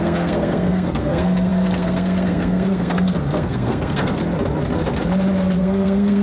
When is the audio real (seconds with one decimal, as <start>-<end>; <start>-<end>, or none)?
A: 4.2-5.6